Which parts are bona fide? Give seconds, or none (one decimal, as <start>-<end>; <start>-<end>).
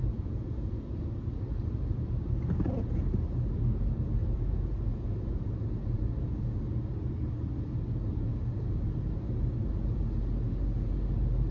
1.0-4.2; 6.6-11.5